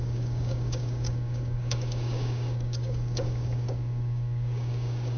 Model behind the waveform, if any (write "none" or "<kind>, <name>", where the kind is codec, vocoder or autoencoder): codec, DAC